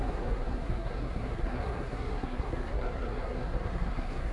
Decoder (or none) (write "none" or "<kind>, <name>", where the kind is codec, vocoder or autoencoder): codec, SNAC